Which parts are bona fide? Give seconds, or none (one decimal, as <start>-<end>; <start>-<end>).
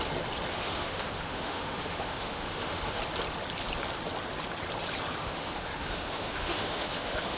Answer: 0.0-0.5; 3.0-5.2